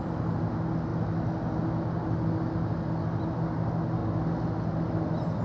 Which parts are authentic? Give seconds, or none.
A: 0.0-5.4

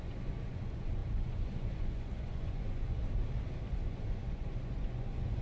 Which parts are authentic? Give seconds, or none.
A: 3.0-3.7

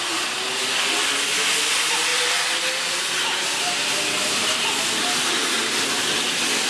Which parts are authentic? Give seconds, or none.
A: 0.0-6.7

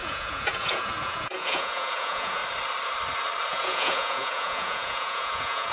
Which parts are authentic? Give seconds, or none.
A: 2.4-3.5

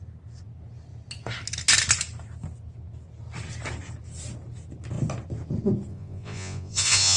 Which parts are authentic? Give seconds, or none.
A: 0.0-5.9

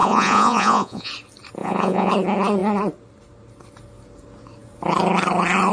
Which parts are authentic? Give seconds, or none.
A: 1.1-1.6; 2.1-5.7

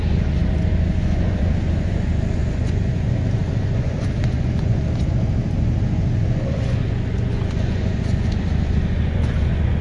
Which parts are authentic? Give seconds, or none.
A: none

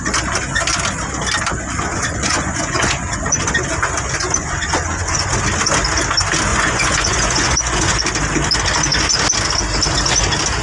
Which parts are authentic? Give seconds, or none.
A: 0.0-1.9; 3.4-4.4; 5.3-6.5; 8.0-10.6